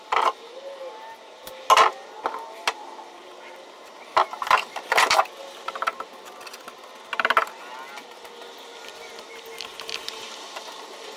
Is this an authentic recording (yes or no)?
yes